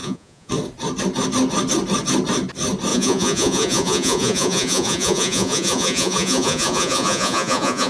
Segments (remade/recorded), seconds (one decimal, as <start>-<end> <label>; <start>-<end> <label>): 0.0-0.5 remade; 0.5-2.9 recorded; 2.9-7.9 remade